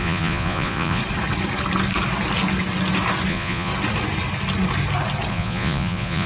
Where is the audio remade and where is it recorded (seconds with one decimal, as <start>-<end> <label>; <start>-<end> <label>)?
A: 0.0-1.0 remade; 1.0-3.3 recorded; 3.3-3.7 remade; 3.7-5.3 recorded; 5.3-6.3 remade